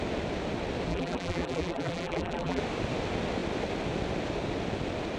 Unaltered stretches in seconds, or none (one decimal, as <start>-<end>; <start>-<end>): 0.0-0.9; 2.6-5.2